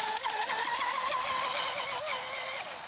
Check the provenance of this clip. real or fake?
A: real